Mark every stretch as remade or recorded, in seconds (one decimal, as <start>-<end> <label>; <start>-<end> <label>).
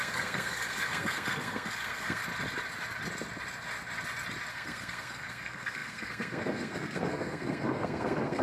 0.0-2.2 remade; 2.2-4.5 recorded; 4.5-8.4 remade